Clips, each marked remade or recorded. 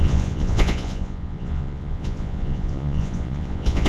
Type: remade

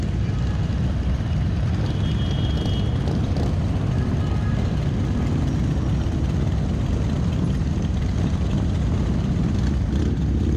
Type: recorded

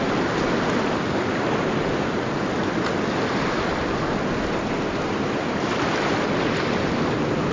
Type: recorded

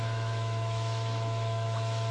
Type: remade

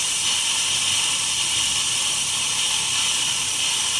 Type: recorded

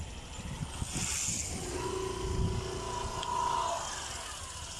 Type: recorded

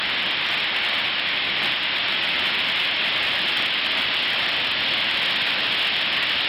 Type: recorded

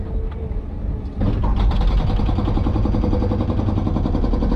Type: recorded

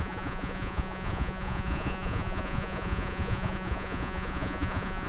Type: remade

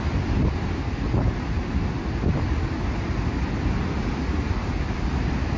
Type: recorded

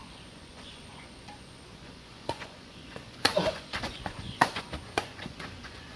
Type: remade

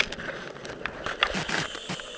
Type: recorded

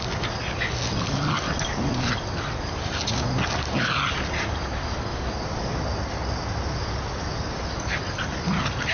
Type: recorded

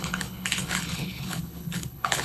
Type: remade